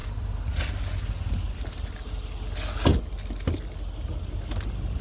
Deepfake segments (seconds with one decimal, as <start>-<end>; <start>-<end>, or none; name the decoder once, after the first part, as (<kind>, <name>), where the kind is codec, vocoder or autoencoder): none